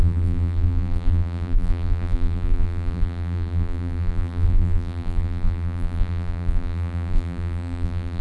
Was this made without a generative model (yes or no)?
no